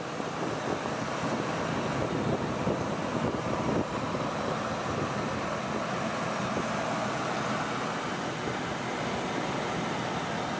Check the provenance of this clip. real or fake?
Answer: fake